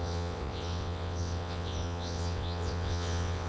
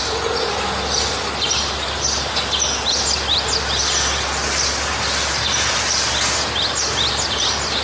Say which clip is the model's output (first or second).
first